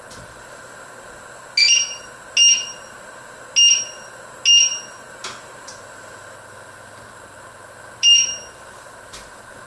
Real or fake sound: real